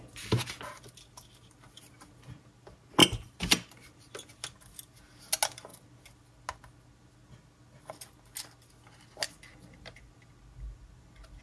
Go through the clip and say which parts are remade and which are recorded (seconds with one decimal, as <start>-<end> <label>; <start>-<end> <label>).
0.0-3.0 recorded; 3.0-4.1 remade; 4.1-9.5 recorded; 9.5-10.1 remade; 10.1-11.4 recorded